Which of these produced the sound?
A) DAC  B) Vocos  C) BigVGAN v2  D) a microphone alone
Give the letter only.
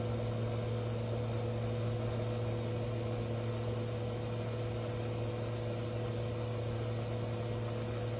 D